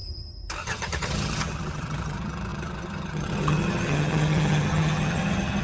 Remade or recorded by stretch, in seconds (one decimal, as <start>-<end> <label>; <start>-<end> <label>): 0.0-0.6 recorded; 0.6-5.6 remade